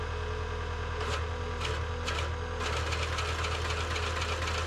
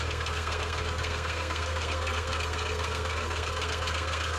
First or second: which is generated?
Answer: second